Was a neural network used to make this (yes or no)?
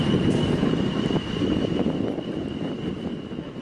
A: no